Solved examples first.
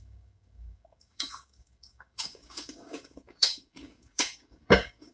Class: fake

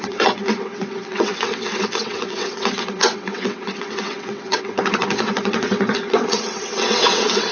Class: fake